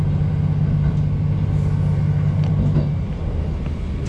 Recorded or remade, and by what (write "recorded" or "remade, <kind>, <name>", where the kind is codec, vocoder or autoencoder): recorded